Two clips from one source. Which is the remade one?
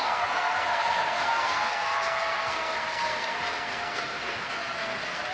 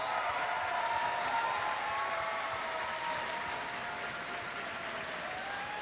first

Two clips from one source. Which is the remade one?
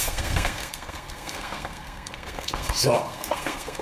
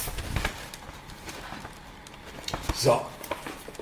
first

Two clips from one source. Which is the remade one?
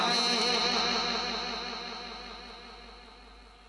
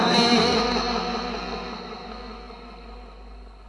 second